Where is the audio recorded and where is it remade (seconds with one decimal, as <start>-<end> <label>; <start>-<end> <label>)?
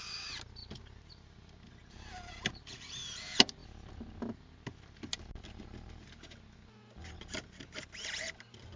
0.0-8.8 recorded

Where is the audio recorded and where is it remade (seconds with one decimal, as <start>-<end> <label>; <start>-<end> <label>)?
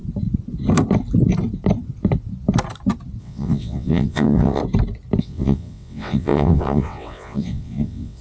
0.0-3.2 recorded; 3.2-4.6 remade; 4.6-5.2 recorded; 5.2-8.2 remade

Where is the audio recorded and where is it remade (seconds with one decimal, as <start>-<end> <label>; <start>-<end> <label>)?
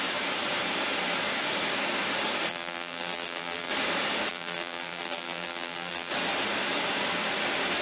0.0-2.5 recorded; 2.5-3.7 remade; 3.7-4.3 recorded; 4.3-6.1 remade; 6.1-7.8 recorded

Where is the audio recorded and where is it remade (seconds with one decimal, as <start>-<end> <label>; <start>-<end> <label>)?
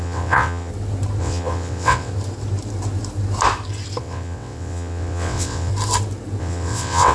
0.0-0.7 remade; 0.7-1.2 recorded; 1.2-2.1 remade; 2.1-4.0 recorded; 4.0-5.7 remade; 5.7-6.4 recorded; 6.4-7.1 remade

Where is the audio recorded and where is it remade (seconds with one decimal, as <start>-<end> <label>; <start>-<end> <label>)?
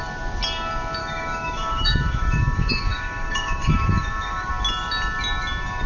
0.0-1.0 recorded; 1.0-4.5 remade; 4.5-5.9 recorded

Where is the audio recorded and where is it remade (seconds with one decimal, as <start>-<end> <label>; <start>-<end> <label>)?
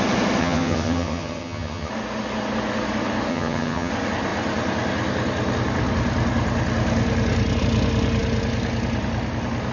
0.0-0.4 recorded; 0.4-1.9 remade; 1.9-3.3 recorded; 3.3-3.9 remade; 3.9-9.7 recorded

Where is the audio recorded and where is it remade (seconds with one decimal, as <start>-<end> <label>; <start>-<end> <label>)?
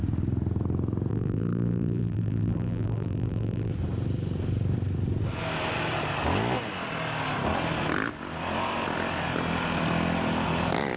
0.0-1.1 recorded; 1.1-3.7 remade; 3.7-11.0 recorded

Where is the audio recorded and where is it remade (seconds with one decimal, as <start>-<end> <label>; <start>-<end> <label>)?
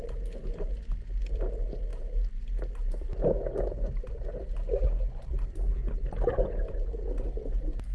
0.0-7.9 recorded